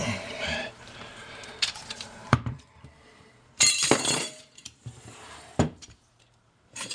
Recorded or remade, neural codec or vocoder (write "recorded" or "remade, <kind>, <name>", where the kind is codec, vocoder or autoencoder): remade, vocoder, BigVGAN v2